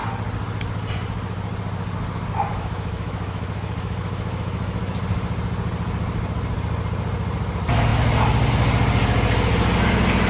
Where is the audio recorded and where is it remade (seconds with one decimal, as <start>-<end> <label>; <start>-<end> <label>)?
0.0-2.5 recorded; 2.5-4.8 remade; 4.8-10.3 recorded